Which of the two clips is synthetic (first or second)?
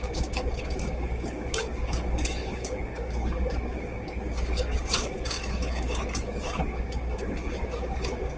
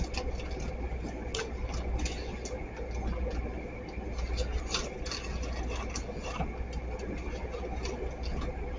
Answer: first